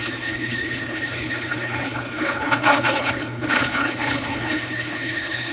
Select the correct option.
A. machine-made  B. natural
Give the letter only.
A